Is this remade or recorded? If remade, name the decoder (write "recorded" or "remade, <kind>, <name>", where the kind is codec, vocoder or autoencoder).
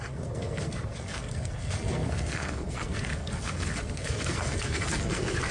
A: remade, codec, SNAC